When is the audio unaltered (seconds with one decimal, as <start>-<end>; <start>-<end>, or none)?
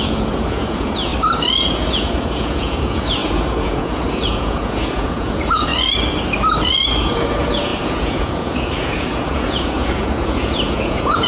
1.1-1.7; 5.7-7.0